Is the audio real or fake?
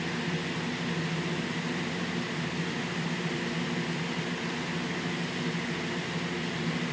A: real